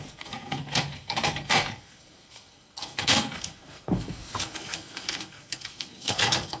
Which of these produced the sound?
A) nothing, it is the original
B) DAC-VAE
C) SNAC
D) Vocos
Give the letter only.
C